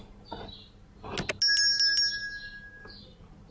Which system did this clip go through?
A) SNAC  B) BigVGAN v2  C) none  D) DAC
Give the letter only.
C